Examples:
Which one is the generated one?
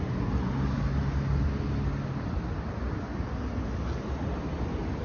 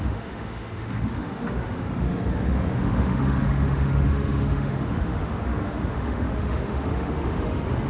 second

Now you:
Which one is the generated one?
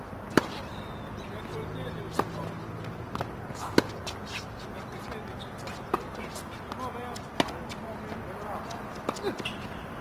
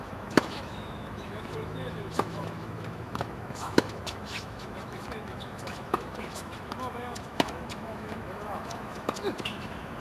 second